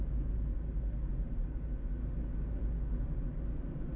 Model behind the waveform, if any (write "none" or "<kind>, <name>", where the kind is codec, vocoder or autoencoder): none